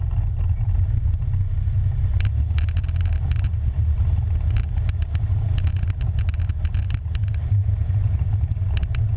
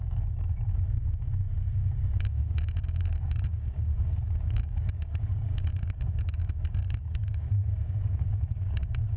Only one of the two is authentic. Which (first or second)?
first